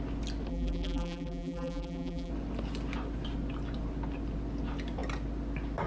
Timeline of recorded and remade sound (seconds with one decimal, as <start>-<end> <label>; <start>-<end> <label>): 0.0-0.5 recorded; 0.5-2.3 remade; 2.3-5.9 recorded